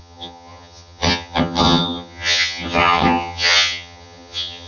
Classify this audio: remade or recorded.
remade